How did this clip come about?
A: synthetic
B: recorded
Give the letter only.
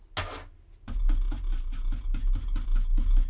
B